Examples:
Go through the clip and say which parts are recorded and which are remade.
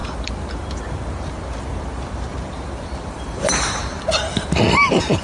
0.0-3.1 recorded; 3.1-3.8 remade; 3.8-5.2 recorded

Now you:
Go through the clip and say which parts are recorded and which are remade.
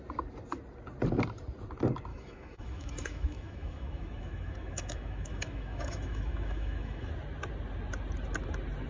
0.0-2.1 recorded; 2.1-7.1 remade; 7.1-8.9 recorded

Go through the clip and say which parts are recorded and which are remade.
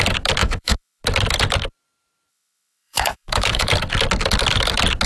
0.0-0.4 recorded; 0.4-1.0 remade; 1.0-2.3 recorded; 2.3-3.7 remade; 3.7-5.1 recorded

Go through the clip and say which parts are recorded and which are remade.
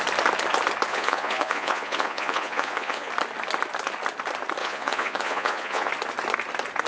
0.0-0.9 recorded; 0.9-3.1 remade; 3.1-4.6 recorded; 4.6-5.9 remade; 5.9-6.9 recorded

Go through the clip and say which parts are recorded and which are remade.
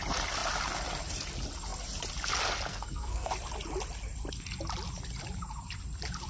0.0-2.7 recorded; 2.7-3.3 remade; 3.3-6.3 recorded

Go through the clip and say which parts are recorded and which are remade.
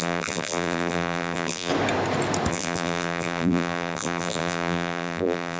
0.0-1.7 remade; 1.7-2.5 recorded; 2.5-5.6 remade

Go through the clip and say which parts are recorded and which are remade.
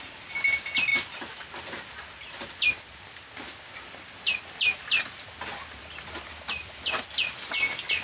0.0-8.0 recorded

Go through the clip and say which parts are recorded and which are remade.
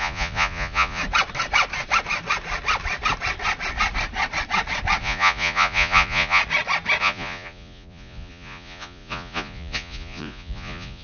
0.0-1.0 remade; 1.0-5.0 recorded; 5.0-6.4 remade; 6.4-7.0 recorded; 7.0-11.0 remade